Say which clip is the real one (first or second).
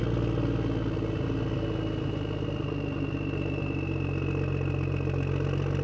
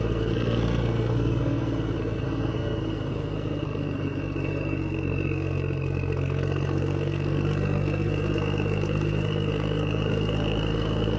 first